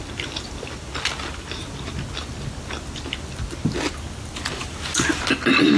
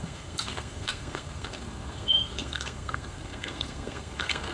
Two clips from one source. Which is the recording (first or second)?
first